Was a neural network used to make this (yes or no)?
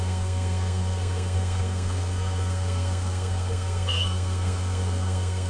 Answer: yes